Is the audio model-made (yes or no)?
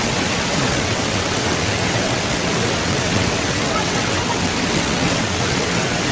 yes